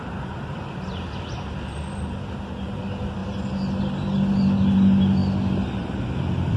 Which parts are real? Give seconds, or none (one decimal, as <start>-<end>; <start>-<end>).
0.0-6.6